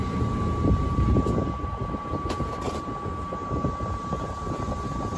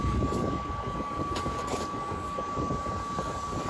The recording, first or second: first